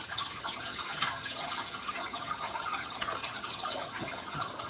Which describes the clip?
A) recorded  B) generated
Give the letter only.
B